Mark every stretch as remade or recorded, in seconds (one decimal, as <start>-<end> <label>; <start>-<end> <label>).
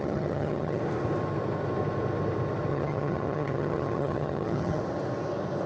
0.0-0.8 remade; 0.8-2.7 recorded; 2.7-4.8 remade; 4.8-5.7 recorded